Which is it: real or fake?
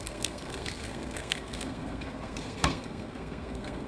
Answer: fake